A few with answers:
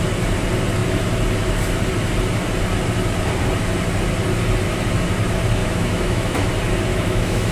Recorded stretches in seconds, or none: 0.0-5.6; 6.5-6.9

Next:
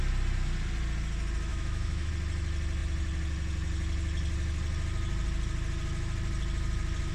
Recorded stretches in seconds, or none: 0.0-1.5; 2.1-7.1

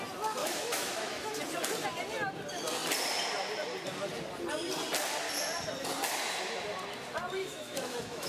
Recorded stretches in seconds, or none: 0.0-0.4; 1.4-7.4

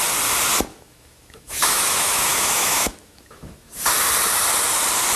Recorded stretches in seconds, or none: 0.0-0.7; 3.8-5.2

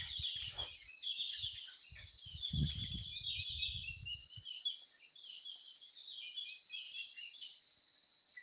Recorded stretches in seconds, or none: 0.0-8.4